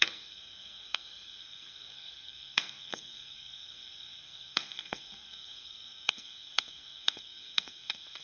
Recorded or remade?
remade